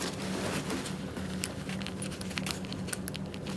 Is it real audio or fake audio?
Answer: real